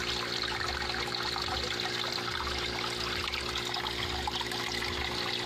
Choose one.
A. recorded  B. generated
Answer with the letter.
A